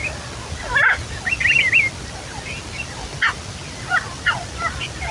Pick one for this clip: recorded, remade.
recorded